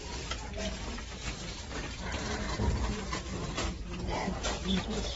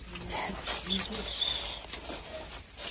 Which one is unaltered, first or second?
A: second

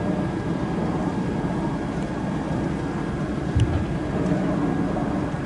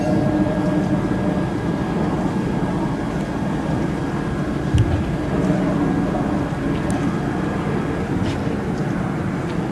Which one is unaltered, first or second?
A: second